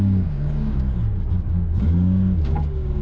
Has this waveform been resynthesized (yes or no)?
yes